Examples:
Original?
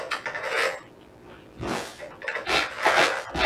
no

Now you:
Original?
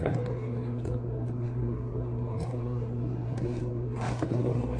no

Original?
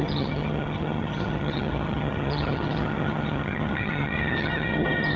no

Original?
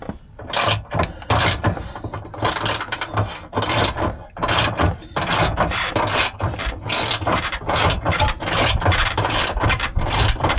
no